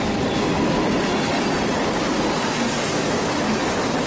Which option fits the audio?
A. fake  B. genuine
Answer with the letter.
B